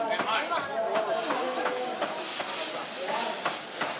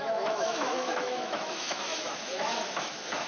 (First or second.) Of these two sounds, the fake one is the second